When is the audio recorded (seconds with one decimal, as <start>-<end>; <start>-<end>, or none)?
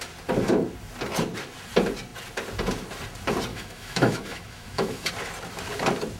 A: 0.0-3.5; 5.1-6.2